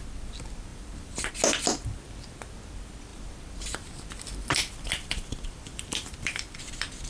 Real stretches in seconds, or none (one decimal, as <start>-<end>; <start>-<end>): 0.0-0.7; 1.3-3.1